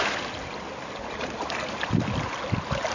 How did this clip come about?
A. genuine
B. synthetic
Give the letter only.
A